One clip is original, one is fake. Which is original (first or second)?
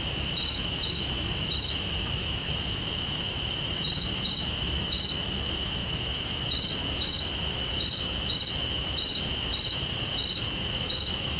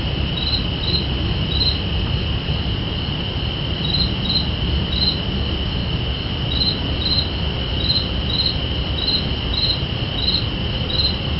second